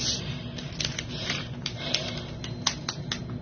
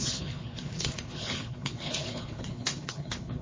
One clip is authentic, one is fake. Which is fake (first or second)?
second